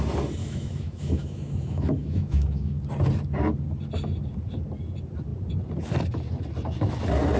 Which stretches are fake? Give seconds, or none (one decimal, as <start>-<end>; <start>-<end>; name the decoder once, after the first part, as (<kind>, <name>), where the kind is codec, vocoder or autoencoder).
0.4-2.8 (autoencoder, DAC-VAE)